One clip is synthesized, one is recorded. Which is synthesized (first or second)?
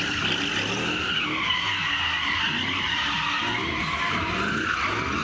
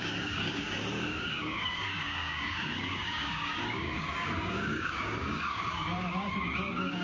second